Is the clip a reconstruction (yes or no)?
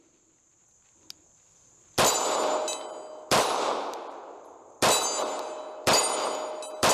no